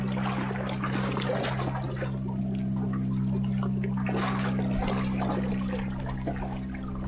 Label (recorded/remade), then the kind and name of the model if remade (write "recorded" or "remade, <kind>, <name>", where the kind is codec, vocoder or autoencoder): recorded